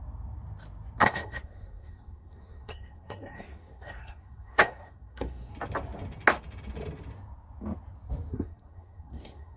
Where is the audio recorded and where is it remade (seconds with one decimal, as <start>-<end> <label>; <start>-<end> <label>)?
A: 0.0-1.0 recorded; 1.0-5.5 remade; 5.5-8.3 recorded; 8.3-9.6 remade